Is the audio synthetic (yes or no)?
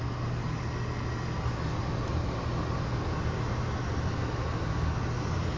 no